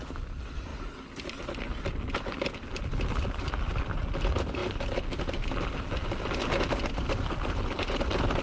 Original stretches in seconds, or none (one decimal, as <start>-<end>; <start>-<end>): 0.0-8.4